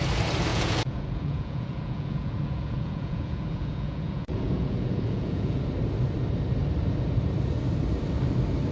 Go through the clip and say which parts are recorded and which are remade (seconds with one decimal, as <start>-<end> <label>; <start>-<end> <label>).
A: 0.0-0.5 recorded; 0.5-5.6 remade; 5.6-8.7 recorded